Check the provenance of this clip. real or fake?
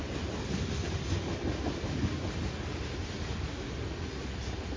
real